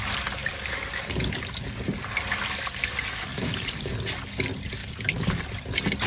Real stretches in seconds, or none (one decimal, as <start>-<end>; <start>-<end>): 0.0-0.4; 1.4-3.3; 3.9-4.8; 5.4-6.1